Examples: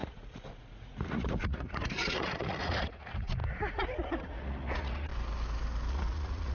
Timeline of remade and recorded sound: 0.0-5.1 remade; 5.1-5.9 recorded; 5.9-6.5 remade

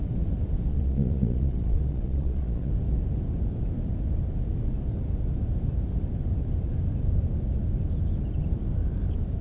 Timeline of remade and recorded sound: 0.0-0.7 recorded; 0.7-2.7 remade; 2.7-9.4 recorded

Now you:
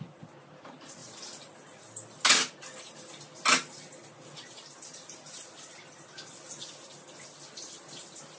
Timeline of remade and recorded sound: 0.0-8.4 recorded

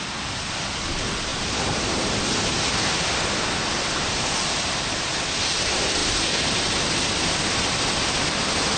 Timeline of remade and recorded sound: 0.0-8.8 recorded

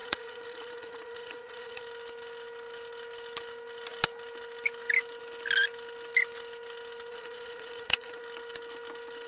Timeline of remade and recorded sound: 0.0-1.8 remade; 1.8-7.1 recorded; 7.1-8.2 remade; 8.2-9.3 recorded

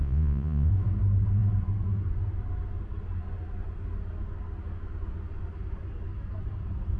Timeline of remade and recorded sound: 0.0-0.7 remade; 0.7-7.0 recorded

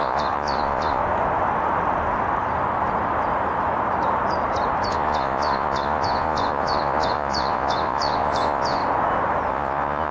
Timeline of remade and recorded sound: 0.0-1.0 remade; 1.0-4.9 recorded; 4.9-8.8 remade; 8.8-9.5 recorded; 9.5-10.1 remade

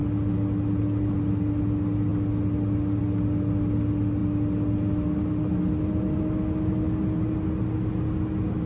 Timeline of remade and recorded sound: 0.0-8.7 recorded